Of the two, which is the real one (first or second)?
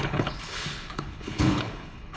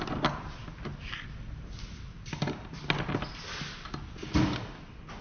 second